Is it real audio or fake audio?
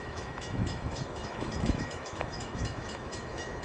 fake